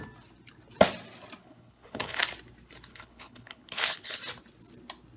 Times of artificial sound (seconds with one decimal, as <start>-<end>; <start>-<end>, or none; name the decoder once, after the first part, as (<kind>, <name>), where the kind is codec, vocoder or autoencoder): 1.4-2.2 (codec, HILCodec); 2.9-4.2